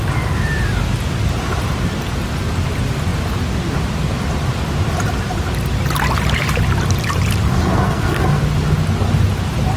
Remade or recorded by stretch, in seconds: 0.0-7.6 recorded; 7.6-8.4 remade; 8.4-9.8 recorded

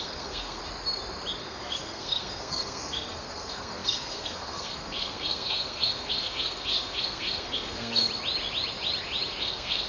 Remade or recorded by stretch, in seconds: 0.0-0.6 remade; 0.6-1.4 recorded; 1.4-8.0 remade; 8.0-9.4 recorded; 9.4-9.9 remade

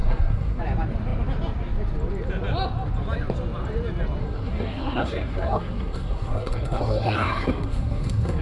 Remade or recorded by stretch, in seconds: 0.0-0.6 remade; 0.6-4.2 recorded; 4.2-8.4 remade

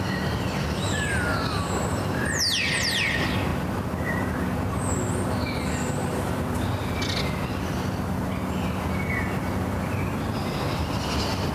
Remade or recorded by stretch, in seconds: 0.0-11.5 recorded